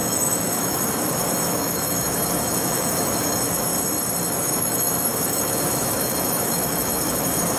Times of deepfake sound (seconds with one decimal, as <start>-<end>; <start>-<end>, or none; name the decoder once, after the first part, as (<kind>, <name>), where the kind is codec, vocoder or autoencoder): 0.0-3.7 (autoencoder, DAC-VAE); 4.3-7.6